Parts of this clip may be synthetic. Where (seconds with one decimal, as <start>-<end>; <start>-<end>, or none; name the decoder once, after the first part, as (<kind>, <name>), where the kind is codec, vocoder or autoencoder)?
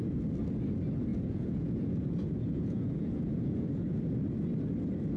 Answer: 1.1-4.0 (vocoder, Vocos)